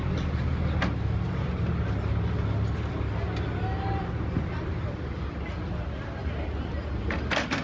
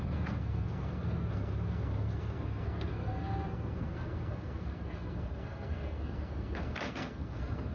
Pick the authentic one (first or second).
first